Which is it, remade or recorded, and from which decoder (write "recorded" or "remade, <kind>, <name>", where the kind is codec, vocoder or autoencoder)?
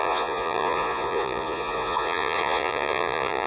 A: remade, vocoder, Vocos